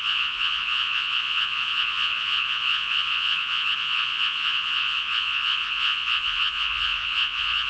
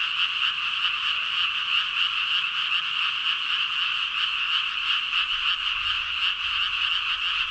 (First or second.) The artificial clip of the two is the first